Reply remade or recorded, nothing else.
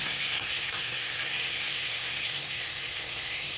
remade